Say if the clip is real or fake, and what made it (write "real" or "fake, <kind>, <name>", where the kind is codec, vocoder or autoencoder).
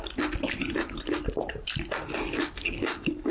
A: real